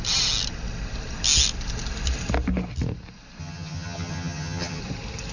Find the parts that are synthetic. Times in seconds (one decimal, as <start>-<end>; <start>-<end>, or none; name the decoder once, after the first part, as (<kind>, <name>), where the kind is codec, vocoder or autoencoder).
3.4-4.8 (vocoder, HiFi-GAN)